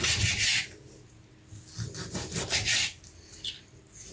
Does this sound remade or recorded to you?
recorded